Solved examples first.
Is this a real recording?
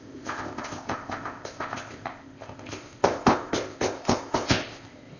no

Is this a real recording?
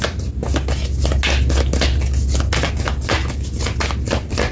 yes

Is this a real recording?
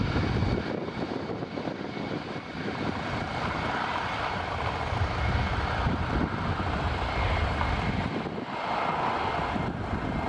yes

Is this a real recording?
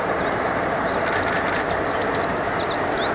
yes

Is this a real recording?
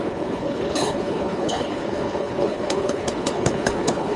no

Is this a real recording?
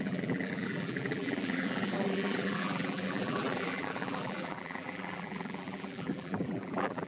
no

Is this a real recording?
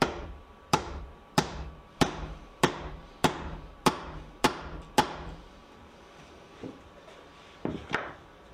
no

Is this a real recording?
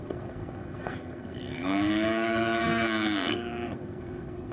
no